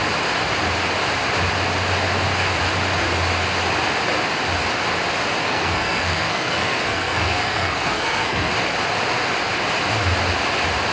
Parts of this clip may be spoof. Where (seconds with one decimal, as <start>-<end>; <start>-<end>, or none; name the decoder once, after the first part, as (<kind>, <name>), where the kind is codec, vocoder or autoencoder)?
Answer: 5.4-8.5 (codec, SNAC)